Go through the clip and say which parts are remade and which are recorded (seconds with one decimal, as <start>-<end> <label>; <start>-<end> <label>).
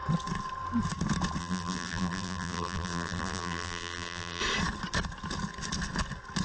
0.0-1.4 recorded; 1.4-4.4 remade; 4.4-6.4 recorded